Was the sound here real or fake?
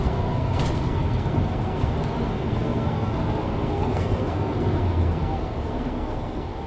fake